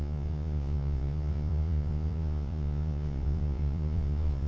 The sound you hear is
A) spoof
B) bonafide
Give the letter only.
A